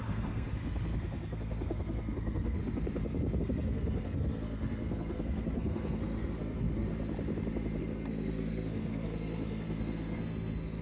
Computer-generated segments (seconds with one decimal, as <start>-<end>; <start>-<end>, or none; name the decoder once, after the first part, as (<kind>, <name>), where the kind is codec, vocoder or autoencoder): 0.0-2.6 (codec, SNAC); 3.4-6.9; 7.8-10.8